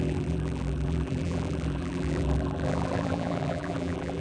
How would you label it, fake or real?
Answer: fake